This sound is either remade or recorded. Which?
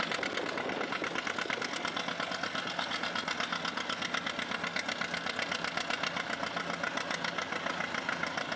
recorded